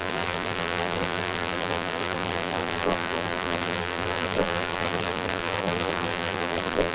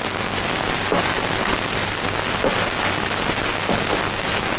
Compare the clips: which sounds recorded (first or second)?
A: second